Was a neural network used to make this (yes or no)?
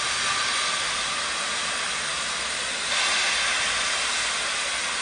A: no